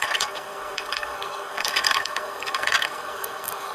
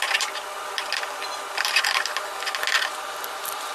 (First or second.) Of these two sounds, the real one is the second